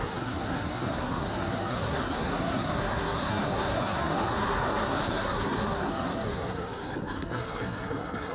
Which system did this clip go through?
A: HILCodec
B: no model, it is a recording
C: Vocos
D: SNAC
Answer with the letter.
D